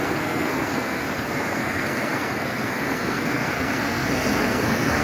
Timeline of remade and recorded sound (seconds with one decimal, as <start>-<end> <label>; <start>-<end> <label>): 0.0-5.0 remade